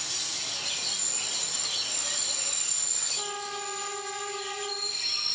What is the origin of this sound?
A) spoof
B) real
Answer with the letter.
B